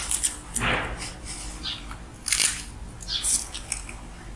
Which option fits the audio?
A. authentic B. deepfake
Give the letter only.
A